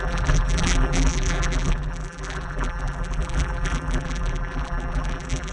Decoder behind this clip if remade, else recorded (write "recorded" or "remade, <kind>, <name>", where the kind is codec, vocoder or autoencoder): remade, vocoder, BigVGAN v2